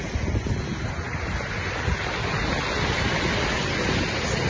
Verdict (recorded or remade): recorded